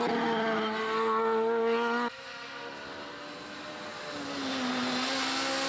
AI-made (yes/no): no